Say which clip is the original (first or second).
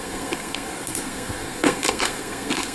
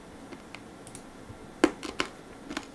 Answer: second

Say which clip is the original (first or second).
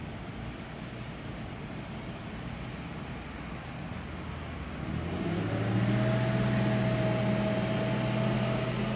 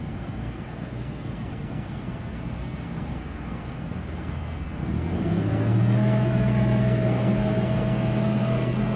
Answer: first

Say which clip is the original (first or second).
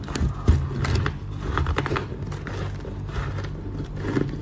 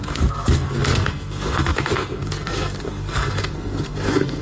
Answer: first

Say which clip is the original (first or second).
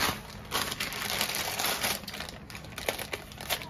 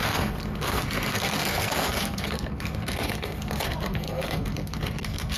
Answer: first